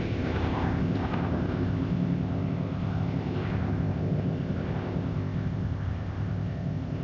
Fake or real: fake